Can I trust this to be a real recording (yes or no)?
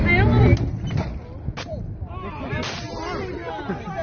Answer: yes